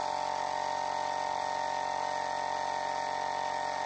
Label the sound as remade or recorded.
recorded